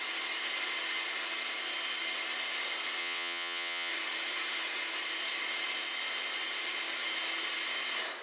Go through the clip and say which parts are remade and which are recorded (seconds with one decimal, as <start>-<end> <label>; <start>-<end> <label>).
0.0-3.0 recorded; 3.0-3.9 remade; 3.9-8.2 recorded